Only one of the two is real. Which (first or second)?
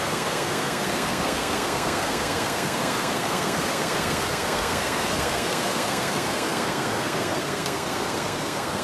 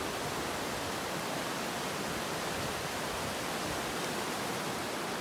second